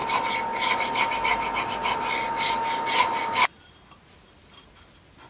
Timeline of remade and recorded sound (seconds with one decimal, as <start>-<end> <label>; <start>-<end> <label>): 0.0-5.3 recorded